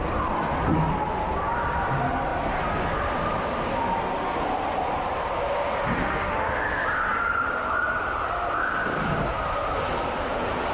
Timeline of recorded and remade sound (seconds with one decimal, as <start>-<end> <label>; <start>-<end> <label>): 0.0-6.0 recorded; 6.0-6.5 remade; 6.5-10.7 recorded